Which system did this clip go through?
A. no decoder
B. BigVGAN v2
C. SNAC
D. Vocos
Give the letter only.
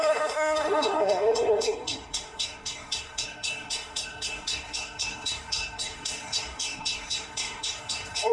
C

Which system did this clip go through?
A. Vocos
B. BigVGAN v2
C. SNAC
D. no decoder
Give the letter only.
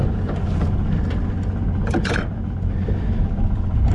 D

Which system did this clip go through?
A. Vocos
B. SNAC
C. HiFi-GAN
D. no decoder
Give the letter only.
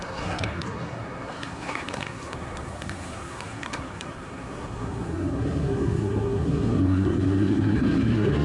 B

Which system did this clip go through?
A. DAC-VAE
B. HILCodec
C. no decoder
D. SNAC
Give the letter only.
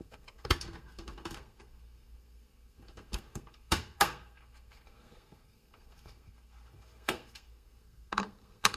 D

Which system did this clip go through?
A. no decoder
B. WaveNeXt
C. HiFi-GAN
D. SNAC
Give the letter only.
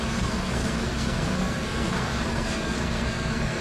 D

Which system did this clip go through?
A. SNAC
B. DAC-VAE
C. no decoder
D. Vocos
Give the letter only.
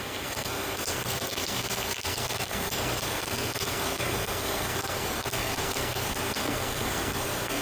A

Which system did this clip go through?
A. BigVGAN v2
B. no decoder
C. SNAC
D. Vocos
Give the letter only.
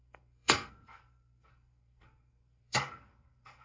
C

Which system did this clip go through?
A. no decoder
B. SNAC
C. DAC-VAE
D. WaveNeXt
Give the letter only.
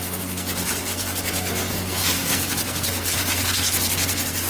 B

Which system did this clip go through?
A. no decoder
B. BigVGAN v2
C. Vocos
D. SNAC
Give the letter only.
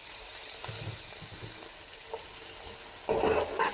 A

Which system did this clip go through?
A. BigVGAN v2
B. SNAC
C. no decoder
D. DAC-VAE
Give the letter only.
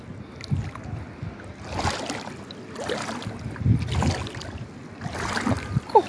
C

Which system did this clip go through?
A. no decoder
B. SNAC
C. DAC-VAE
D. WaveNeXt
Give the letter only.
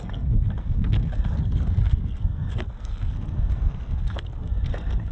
B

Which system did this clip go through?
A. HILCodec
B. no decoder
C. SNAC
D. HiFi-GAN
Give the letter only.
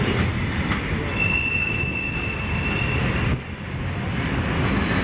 B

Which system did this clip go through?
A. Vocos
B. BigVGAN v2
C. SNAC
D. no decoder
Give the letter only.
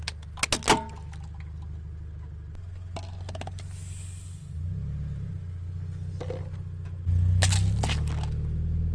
D